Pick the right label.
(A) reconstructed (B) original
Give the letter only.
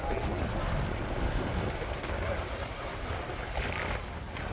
B